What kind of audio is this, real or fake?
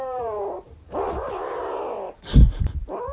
fake